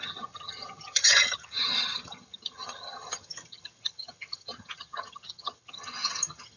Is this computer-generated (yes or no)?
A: yes